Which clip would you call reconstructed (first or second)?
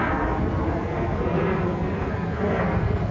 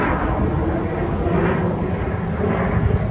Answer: first